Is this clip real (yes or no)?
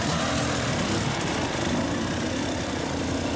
yes